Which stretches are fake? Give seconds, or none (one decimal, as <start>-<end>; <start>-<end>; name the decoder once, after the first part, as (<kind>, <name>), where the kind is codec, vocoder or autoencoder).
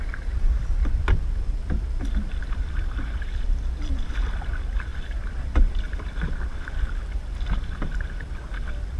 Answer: 0.0-9.0 (vocoder, BigVGAN v2)